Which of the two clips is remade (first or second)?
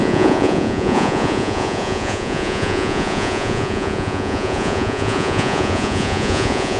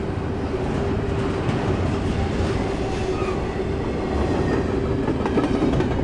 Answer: first